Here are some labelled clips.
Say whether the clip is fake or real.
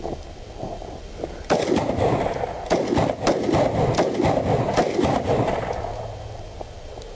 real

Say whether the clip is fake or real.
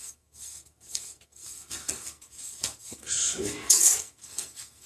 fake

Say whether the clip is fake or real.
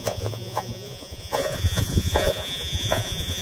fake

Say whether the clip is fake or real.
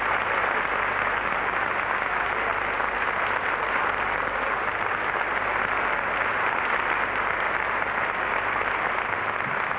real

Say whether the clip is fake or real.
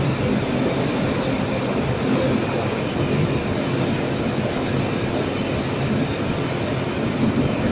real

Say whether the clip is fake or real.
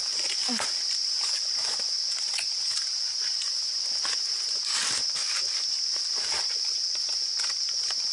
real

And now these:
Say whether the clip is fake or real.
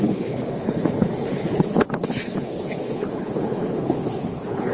fake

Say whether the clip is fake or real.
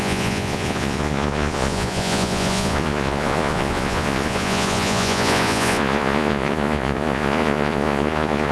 fake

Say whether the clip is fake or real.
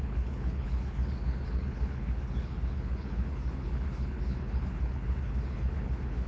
fake